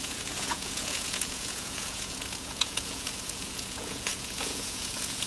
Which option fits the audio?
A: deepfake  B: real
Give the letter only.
A